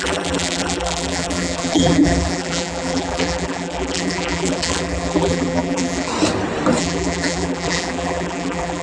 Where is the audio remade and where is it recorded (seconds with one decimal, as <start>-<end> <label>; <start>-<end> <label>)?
0.0-6.1 remade; 6.1-6.8 recorded; 6.8-8.8 remade